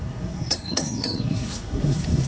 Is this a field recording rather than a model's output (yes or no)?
no